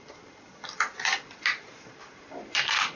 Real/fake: real